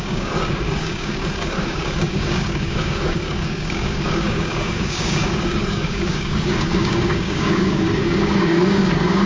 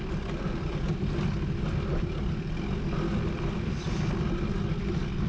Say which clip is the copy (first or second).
first